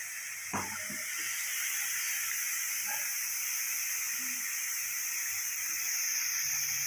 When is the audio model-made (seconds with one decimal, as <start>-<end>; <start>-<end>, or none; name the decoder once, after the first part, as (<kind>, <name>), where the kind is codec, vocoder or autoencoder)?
none